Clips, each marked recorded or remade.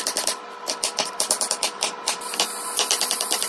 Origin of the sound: remade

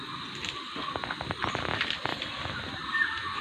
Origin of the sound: recorded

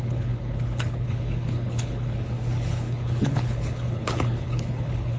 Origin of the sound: remade